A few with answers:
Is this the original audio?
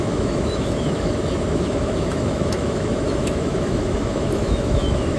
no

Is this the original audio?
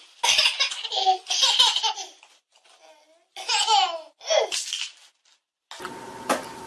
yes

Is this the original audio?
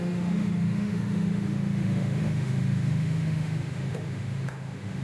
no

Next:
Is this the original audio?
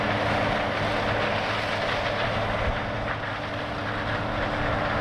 yes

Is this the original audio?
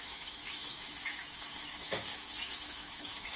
no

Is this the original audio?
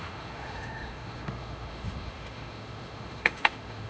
no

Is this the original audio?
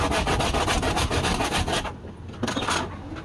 yes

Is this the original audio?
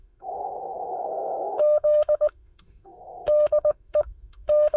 no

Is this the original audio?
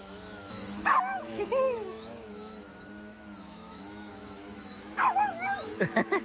no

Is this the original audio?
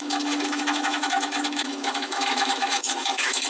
no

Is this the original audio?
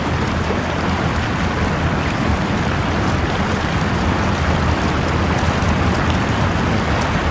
yes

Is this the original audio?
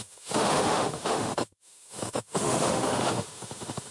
no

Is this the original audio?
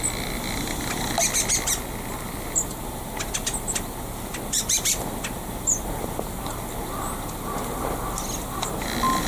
yes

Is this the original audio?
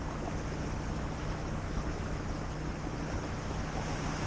no